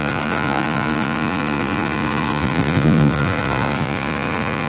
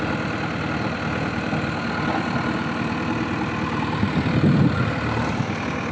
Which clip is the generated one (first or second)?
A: first